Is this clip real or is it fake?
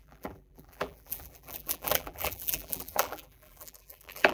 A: fake